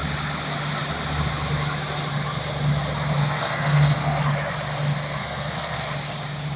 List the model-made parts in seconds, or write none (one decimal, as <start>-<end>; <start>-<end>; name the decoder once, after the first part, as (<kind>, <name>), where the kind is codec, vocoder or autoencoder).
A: 3.2-4.2 (codec, SNAC); 5.2-5.9